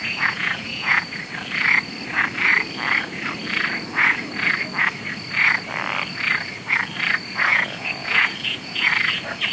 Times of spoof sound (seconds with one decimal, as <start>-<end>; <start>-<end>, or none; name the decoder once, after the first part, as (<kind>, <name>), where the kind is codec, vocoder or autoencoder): 0.0-1.1 (vocoder, Vocos); 7.5-8.9